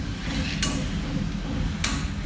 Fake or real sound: real